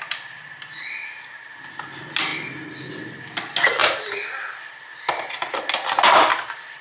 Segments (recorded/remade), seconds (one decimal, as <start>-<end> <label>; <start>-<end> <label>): 0.0-6.8 recorded